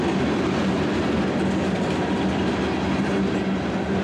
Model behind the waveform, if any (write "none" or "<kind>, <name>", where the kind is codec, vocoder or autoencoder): none